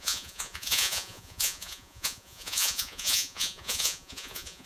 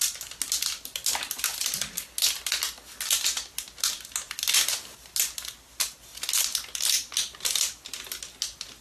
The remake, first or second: first